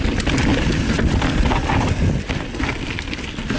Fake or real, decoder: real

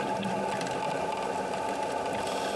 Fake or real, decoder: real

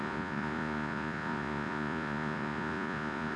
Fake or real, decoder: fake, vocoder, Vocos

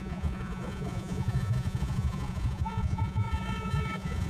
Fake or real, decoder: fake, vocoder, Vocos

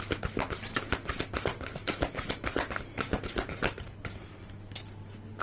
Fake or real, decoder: real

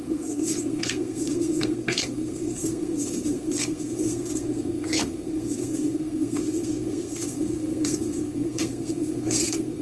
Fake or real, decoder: fake, codec, SNAC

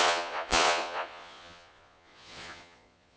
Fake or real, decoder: fake, vocoder, Vocos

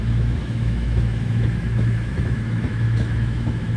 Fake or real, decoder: fake, autoencoder, DAC-VAE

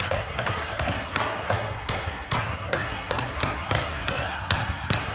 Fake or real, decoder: fake, codec, SNAC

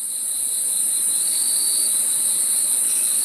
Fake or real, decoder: real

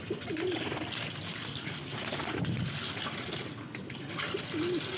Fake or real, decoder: real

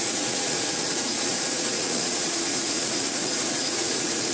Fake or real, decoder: fake, vocoder, Vocos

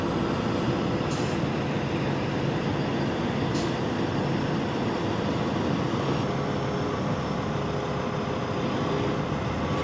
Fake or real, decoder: real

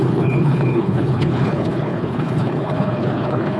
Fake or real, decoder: fake, codec, HILCodec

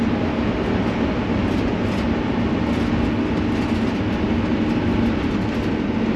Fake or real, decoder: real